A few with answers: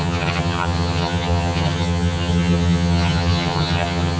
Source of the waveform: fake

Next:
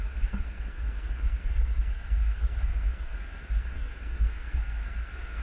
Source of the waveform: fake